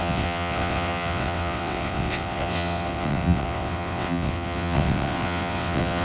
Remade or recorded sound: remade